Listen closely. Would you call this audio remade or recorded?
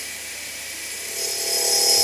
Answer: remade